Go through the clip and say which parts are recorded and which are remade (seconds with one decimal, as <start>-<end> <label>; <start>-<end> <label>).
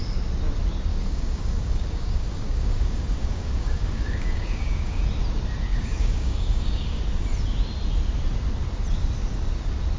0.0-0.9 recorded; 0.9-5.0 remade; 5.0-5.7 recorded; 5.7-7.0 remade; 7.0-10.0 recorded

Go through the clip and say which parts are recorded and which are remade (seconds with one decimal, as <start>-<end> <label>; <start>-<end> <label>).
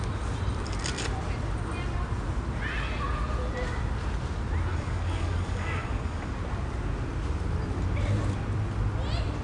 0.0-4.7 recorded; 4.7-6.3 remade; 6.3-9.4 recorded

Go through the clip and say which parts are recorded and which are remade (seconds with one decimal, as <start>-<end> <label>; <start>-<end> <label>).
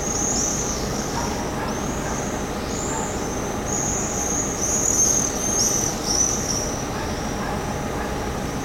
0.0-0.5 recorded; 0.5-1.4 remade; 1.4-5.9 recorded; 5.9-6.7 remade; 6.7-8.6 recorded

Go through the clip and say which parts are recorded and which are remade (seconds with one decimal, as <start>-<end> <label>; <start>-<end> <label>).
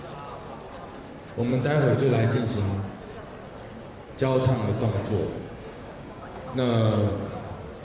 0.0-1.5 recorded; 1.5-2.8 remade; 2.8-3.4 recorded; 3.4-3.9 remade; 3.9-4.8 recorded; 4.8-7.1 remade; 7.1-7.8 recorded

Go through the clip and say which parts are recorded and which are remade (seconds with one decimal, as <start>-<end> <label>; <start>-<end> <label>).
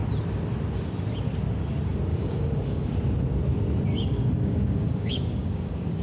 0.0-2.1 recorded; 2.1-2.9 remade; 2.9-3.9 recorded; 3.9-6.0 remade